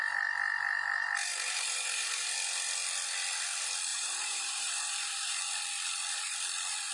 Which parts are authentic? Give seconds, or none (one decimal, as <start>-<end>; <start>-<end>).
0.0-1.2; 2.3-3.9; 5.4-6.9